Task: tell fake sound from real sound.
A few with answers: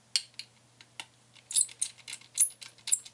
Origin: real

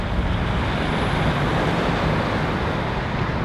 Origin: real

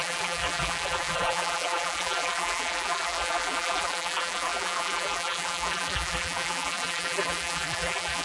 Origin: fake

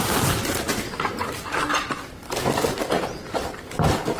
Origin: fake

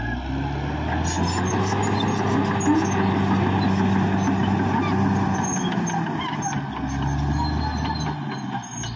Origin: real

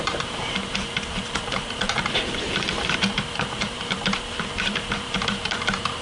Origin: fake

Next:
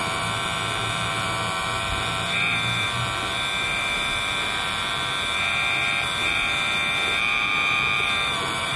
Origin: fake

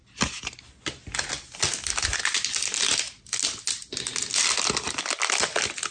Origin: real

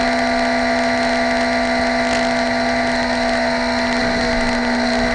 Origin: real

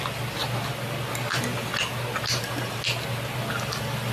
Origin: real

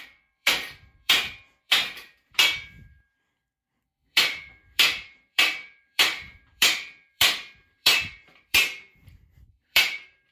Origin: fake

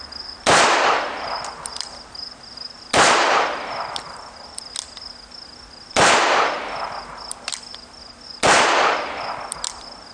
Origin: real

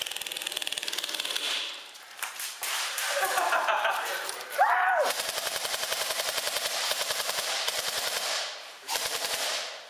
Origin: fake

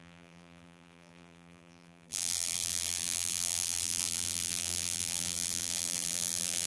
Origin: fake